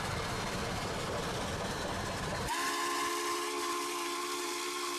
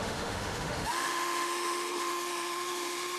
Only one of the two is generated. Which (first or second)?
second